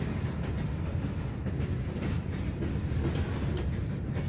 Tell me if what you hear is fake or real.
real